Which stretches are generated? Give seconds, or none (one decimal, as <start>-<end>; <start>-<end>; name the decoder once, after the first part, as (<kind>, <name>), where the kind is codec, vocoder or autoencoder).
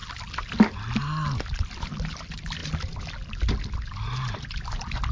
none